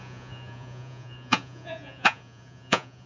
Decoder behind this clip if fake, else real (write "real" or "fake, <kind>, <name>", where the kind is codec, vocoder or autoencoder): fake, vocoder, Vocos